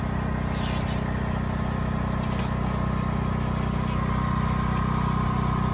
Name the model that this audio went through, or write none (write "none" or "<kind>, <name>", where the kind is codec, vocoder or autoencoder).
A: none